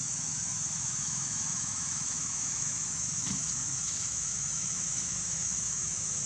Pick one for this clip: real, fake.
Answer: fake